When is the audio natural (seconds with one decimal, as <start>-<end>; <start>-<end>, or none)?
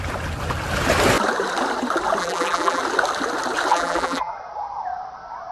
0.0-2.2; 2.8-3.7; 4.3-5.5